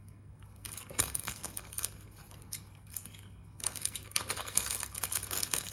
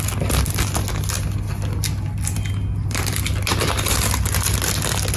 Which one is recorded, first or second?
second